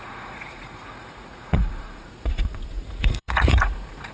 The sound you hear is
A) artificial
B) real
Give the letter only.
A